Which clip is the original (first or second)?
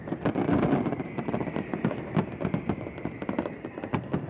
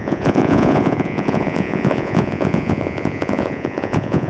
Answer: first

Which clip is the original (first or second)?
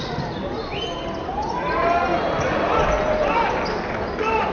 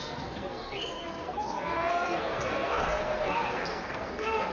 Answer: first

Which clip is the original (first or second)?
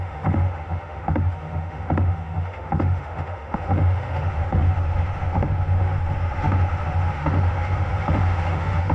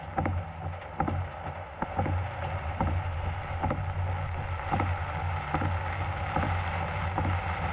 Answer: second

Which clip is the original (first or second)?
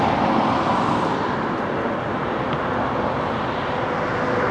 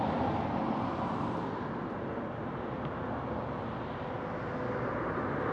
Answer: second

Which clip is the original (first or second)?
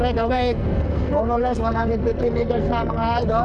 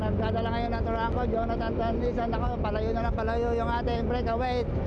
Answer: second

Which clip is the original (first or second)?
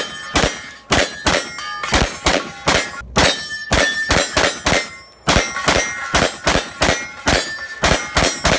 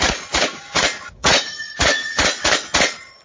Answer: first